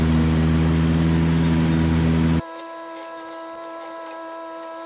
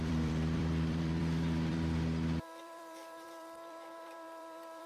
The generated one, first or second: second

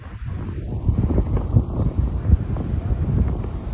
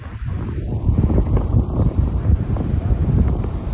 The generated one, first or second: second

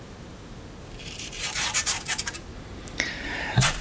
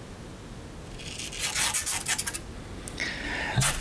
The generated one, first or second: first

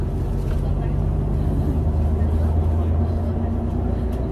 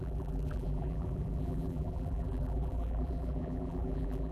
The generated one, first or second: second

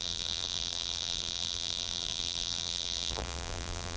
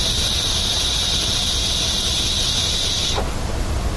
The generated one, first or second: first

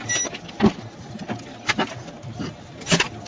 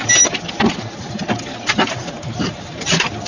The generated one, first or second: second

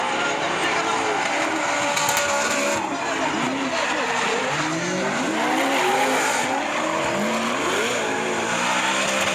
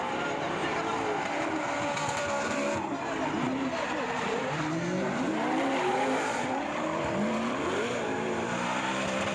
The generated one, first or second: second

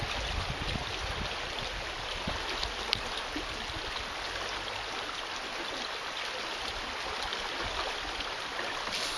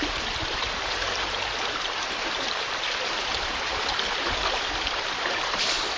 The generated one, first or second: second